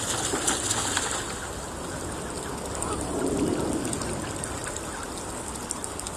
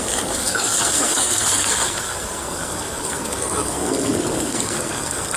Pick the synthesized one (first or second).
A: second